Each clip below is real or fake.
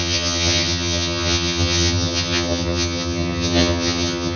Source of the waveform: fake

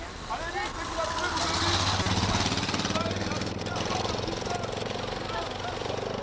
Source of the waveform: real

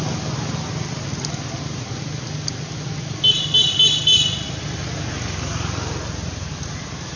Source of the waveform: real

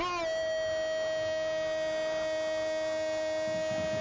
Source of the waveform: real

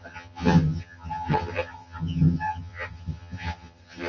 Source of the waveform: fake